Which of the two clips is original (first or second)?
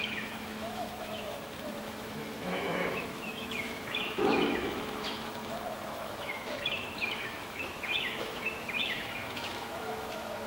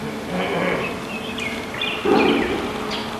second